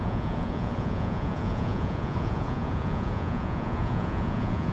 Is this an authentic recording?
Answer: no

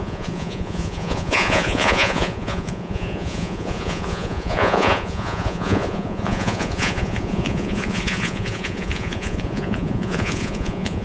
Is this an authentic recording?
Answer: no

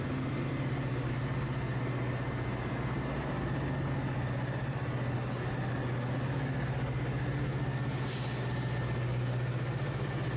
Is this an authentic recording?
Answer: yes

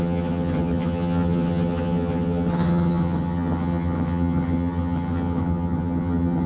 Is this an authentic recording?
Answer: no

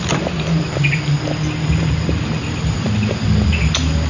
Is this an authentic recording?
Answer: yes